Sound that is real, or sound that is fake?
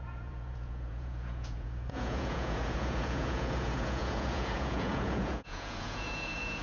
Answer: fake